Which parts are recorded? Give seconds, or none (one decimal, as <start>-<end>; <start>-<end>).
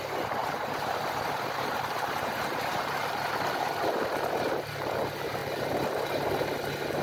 0.0-0.4; 3.3-7.0